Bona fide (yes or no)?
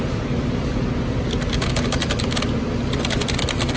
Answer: yes